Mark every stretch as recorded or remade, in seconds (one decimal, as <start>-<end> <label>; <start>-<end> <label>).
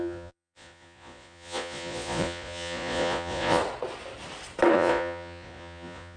0.0-3.6 remade; 3.6-4.7 recorded; 4.7-6.2 remade